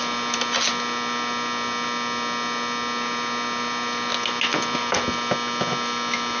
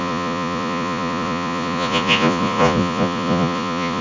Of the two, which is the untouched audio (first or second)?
first